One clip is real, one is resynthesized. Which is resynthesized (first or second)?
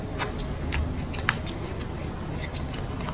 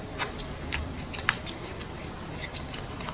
second